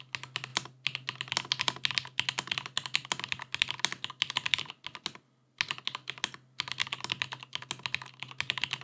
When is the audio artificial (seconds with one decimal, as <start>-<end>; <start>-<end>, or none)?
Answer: none